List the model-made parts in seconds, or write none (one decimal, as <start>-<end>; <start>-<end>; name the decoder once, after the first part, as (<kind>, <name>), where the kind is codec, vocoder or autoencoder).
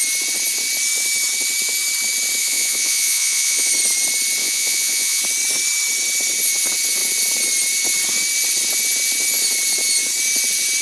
2.4-3.7 (vocoder, Vocos); 4.4-5.2